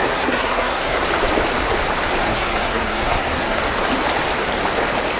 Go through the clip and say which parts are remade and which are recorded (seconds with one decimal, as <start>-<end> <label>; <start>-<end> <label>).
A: 0.0-1.0 remade; 1.0-2.2 recorded; 2.2-3.6 remade; 3.6-5.2 recorded

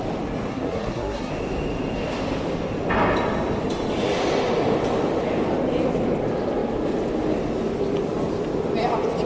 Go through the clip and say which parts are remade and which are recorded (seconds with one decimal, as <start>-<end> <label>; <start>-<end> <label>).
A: 0.0-0.5 recorded; 0.5-1.3 remade; 1.3-9.3 recorded

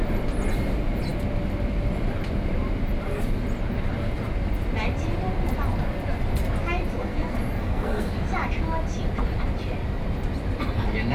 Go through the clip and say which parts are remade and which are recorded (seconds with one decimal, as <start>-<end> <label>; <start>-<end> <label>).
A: 0.0-7.0 recorded; 7.0-8.1 remade; 8.1-11.1 recorded